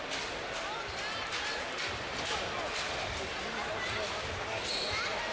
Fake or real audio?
real